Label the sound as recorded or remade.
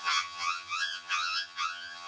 remade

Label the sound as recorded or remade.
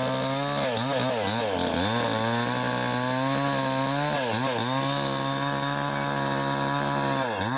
recorded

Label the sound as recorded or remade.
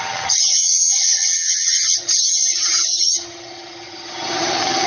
remade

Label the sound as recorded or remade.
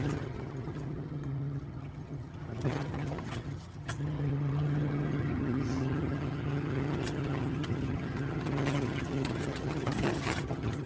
remade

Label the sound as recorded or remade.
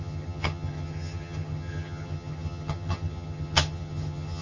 remade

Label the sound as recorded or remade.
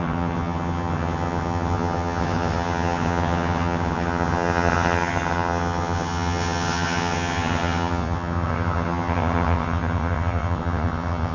remade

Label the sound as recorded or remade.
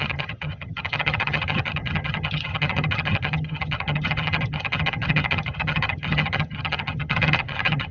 remade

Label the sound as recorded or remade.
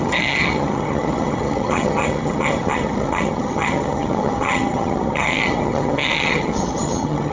remade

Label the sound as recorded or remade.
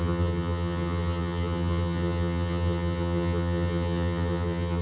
remade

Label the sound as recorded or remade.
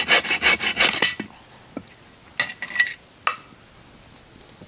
recorded